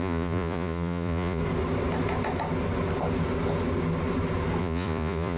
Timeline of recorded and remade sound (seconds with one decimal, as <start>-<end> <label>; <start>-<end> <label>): 0.0-1.4 remade; 1.4-4.6 recorded; 4.6-5.4 remade